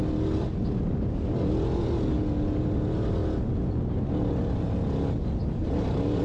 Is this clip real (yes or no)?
yes